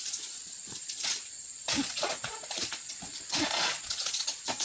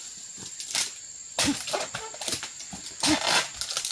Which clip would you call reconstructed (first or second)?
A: first